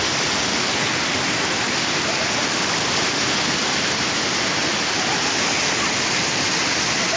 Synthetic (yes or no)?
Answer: no